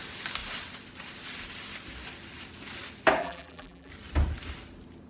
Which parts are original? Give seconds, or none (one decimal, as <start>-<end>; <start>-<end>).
0.0-3.2; 3.9-5.1